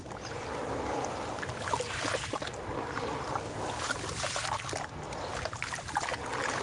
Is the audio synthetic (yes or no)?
no